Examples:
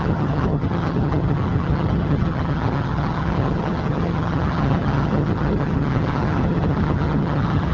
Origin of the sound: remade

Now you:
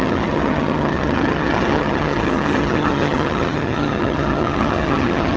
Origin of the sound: remade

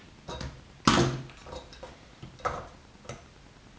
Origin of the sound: recorded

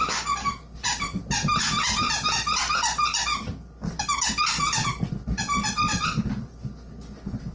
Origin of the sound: recorded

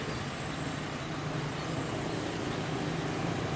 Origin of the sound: recorded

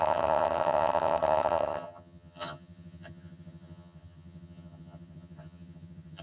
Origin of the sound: remade